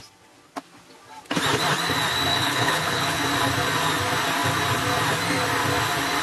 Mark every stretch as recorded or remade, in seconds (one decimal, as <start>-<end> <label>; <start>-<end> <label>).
0.0-2.3 recorded; 2.3-3.2 remade; 3.2-6.2 recorded